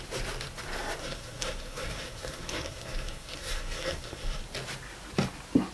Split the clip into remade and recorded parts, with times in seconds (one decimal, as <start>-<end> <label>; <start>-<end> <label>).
0.0-1.0 recorded; 1.0-4.4 remade; 4.4-5.7 recorded